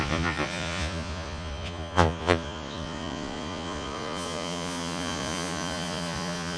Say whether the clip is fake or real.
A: fake